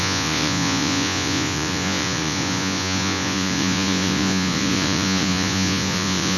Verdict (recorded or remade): remade